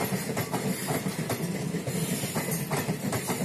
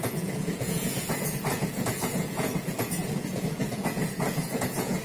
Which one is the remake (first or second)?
second